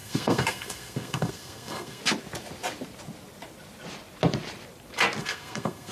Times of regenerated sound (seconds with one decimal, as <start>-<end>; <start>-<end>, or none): 0.0-2.0; 5.2-5.9